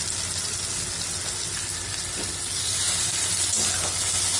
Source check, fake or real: real